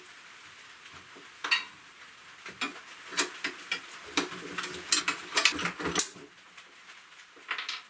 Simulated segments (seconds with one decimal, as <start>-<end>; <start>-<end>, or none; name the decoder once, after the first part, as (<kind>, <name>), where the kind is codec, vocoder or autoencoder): none